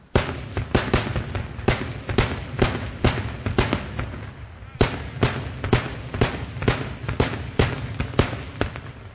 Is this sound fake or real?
real